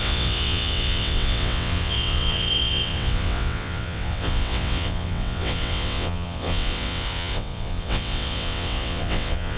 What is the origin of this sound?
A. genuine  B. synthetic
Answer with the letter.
B